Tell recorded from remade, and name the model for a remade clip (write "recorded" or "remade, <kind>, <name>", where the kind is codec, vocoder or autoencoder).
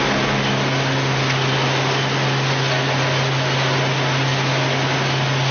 recorded